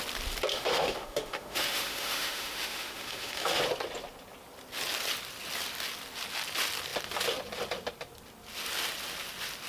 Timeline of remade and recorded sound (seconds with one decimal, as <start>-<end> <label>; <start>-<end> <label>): 0.0-0.5 recorded; 0.5-3.6 remade; 3.6-9.7 recorded